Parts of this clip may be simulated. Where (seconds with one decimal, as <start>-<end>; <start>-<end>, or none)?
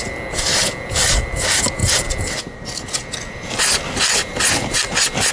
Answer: none